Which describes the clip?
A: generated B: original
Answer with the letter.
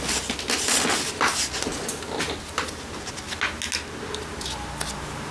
B